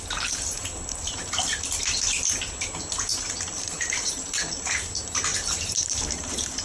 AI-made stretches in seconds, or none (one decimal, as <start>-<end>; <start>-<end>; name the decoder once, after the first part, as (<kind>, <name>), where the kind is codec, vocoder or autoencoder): 5.3-6.6 (vocoder, BigVGAN v2)